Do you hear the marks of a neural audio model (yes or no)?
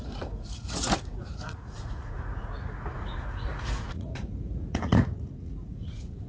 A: yes